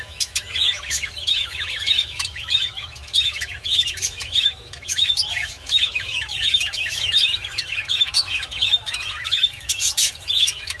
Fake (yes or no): yes